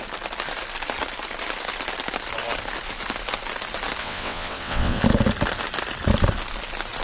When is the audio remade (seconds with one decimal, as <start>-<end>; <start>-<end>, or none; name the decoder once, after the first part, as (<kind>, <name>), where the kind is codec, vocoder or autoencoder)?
4.0-5.0 (vocoder, WaveNeXt)